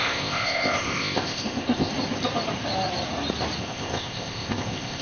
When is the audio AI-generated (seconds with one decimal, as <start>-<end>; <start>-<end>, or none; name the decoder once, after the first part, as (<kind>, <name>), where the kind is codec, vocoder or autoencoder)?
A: 0.0-1.9 (codec, ZipCodec); 3.6-5.0